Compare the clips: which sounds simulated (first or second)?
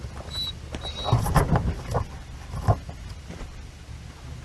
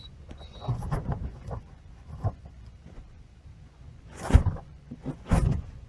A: second